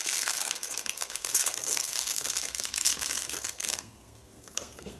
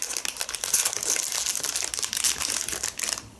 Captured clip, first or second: second